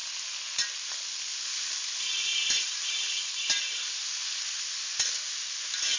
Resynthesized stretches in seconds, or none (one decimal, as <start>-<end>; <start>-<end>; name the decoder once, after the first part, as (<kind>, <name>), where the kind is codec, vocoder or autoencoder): none